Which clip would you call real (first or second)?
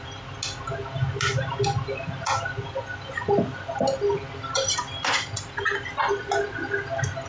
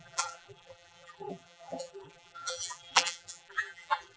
first